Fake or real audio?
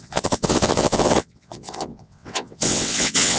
fake